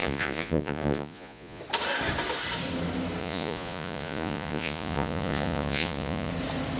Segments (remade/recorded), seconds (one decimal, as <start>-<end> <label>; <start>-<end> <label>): 0.0-1.6 remade; 1.6-3.2 recorded; 3.2-6.3 remade; 6.3-6.8 recorded